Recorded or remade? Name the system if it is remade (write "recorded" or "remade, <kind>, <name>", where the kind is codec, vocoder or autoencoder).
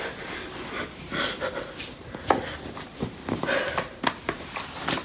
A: recorded